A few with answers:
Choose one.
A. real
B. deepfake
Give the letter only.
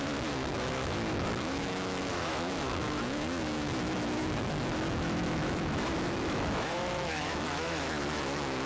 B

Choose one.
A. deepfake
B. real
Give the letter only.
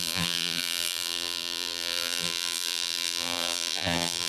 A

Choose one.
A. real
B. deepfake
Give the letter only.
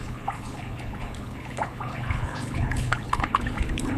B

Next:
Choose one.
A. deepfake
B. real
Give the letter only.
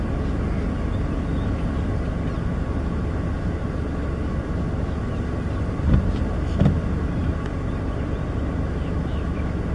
B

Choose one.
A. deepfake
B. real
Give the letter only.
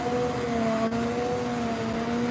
B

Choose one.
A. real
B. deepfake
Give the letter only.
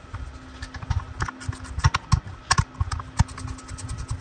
A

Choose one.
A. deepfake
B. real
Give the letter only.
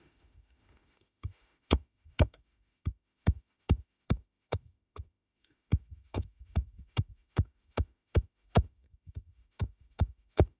A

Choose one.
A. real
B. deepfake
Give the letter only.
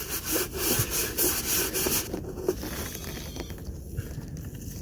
A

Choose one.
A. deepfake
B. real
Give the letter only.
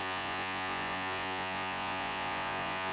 A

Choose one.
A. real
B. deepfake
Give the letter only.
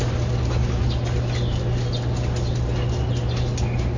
A